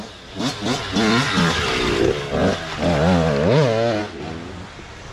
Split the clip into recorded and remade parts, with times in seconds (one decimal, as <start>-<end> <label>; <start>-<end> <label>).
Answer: 0.0-5.1 recorded